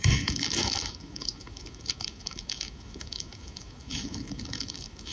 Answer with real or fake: fake